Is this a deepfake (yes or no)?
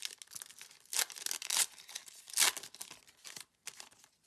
no